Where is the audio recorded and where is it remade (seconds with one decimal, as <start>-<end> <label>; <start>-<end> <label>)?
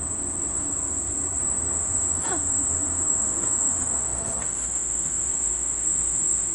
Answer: 0.0-0.7 remade; 0.7-1.4 recorded; 1.4-6.5 remade